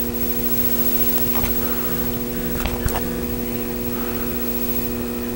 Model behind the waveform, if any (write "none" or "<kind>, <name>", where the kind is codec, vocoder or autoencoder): none